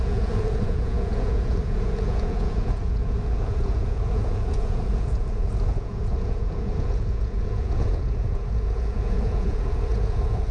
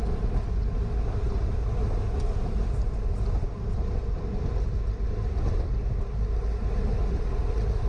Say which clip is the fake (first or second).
first